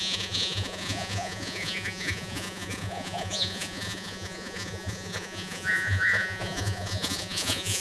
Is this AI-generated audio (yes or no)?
yes